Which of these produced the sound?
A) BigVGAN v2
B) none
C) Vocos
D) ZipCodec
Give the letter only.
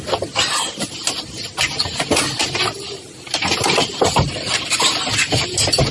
B